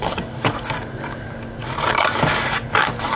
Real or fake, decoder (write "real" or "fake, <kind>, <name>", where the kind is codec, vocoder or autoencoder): fake, codec, DAC